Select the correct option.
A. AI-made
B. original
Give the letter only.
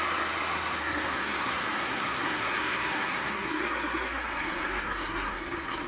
A